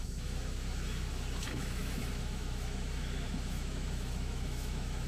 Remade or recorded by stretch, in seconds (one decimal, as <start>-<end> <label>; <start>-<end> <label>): 0.0-5.1 remade